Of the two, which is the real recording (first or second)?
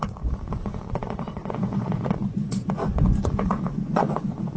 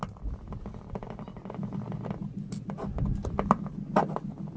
second